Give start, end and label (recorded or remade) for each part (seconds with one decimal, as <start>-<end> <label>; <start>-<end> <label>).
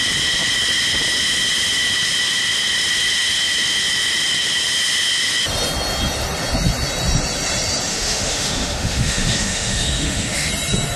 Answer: 0.0-7.9 recorded; 7.9-10.5 remade; 10.5-11.0 recorded